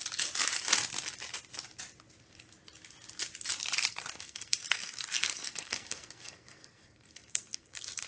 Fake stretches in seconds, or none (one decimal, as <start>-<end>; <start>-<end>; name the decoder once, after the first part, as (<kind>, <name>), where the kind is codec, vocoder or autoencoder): 3.9-8.1 (codec, SNAC)